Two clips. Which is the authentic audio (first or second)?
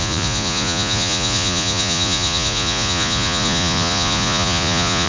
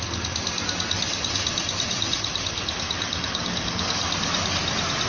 second